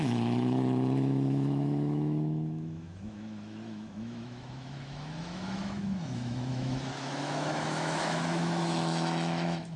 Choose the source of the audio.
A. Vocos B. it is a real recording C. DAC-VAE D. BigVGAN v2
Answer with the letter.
C